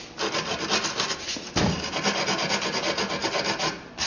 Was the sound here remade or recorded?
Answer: recorded